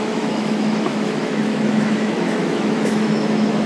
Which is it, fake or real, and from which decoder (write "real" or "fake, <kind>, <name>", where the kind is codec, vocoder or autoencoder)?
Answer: fake, autoencoder, DAC-VAE